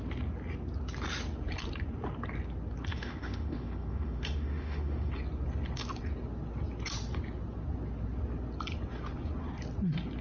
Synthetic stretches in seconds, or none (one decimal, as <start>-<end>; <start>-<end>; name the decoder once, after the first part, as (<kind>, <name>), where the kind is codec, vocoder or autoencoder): 2.9-5.1 (autoencoder, DAC-VAE)